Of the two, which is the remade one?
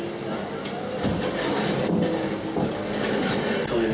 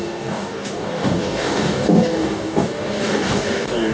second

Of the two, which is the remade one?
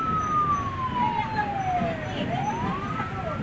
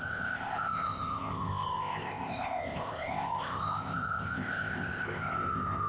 second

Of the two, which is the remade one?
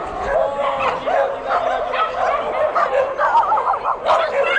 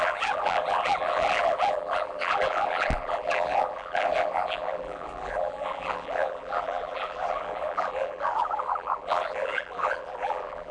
second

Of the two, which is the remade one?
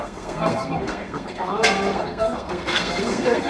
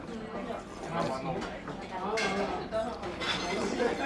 first